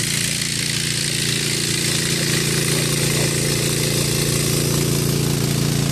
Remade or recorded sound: recorded